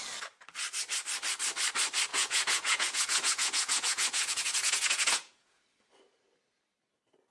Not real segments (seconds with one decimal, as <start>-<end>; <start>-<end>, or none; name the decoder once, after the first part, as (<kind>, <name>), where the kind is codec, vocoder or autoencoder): 2.1-5.6 (vocoder, Vocos)